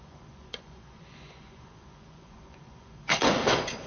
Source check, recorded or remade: remade